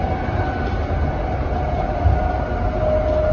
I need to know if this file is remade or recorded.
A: recorded